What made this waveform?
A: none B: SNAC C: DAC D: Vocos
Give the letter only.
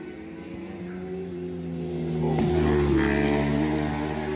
A